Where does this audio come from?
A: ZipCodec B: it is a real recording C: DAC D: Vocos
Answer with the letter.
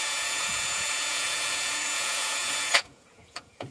D